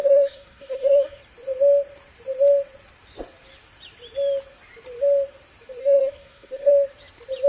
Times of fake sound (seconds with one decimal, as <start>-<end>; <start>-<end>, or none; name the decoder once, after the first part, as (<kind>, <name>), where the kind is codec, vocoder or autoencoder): 0.0-1.2 (codec, SNAC); 5.8-6.7